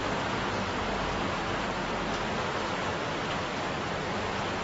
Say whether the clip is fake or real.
real